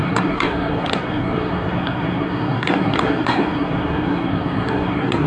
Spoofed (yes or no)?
yes